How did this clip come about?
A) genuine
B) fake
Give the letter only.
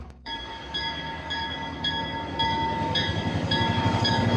B